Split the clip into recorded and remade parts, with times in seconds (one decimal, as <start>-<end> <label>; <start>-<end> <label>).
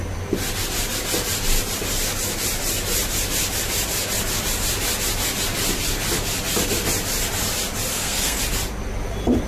0.0-7.9 recorded; 7.9-8.4 remade; 8.4-9.5 recorded